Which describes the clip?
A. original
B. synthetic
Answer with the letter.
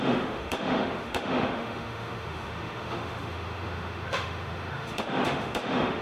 B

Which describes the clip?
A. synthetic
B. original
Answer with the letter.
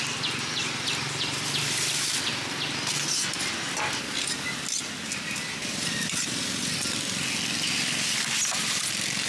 B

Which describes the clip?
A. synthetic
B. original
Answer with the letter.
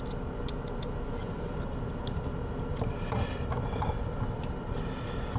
B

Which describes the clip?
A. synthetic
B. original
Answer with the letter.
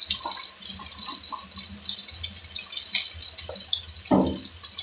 B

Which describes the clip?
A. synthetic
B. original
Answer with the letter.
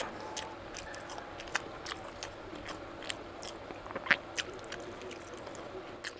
B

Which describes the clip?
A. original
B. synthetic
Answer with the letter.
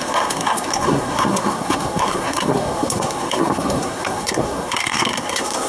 B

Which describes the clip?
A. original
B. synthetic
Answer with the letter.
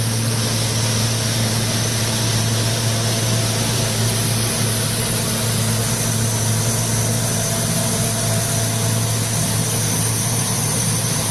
A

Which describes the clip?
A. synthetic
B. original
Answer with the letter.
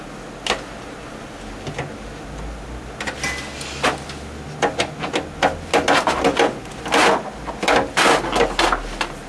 B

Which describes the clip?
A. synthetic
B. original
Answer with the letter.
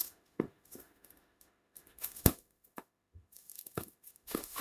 A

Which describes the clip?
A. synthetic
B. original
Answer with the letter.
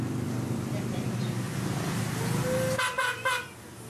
B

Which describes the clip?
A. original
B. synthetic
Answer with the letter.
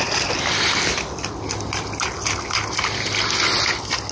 A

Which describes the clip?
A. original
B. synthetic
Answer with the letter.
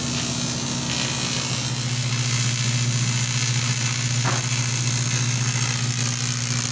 A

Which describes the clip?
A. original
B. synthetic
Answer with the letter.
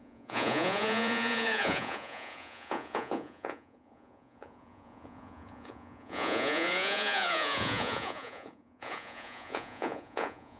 B